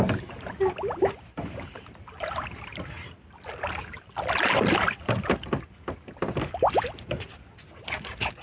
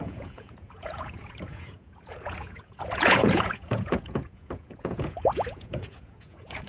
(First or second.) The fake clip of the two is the second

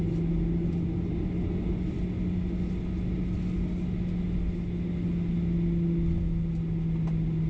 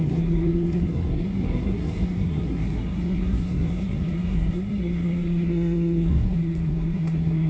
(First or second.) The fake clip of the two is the second